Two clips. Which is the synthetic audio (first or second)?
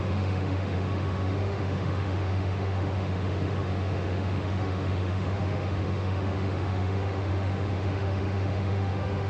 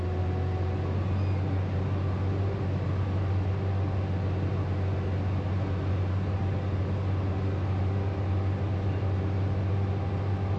first